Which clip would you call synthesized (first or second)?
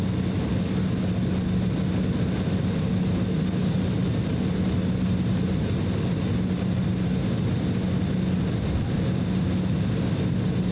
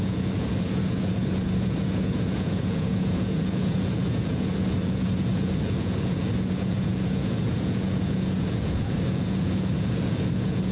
second